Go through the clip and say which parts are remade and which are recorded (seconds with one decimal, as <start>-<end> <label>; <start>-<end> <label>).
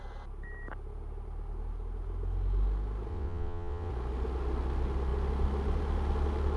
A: 0.0-3.1 recorded; 3.1-3.9 remade; 3.9-6.6 recorded